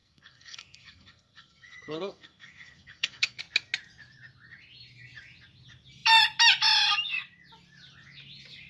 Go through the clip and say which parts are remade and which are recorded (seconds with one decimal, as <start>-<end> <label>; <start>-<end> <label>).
0.0-3.4 remade; 3.4-8.7 recorded